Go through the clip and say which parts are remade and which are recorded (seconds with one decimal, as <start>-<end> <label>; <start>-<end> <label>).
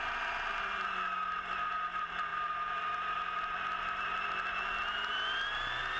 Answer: 0.0-6.0 recorded